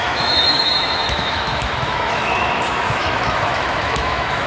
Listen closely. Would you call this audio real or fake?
fake